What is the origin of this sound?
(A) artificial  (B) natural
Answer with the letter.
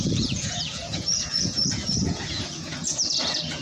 A